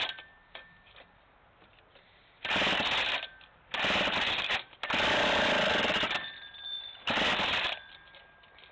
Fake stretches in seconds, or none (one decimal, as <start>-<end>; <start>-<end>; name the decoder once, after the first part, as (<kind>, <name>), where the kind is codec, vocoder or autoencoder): none